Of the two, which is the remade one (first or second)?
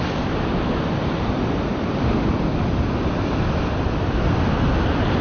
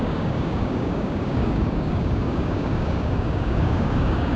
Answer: second